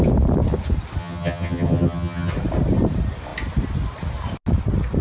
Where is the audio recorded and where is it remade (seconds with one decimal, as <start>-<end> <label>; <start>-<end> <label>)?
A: 0.0-1.0 recorded; 1.0-2.3 remade; 2.3-5.0 recorded